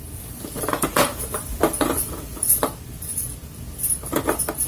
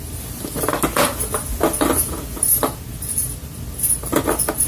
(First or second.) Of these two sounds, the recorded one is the second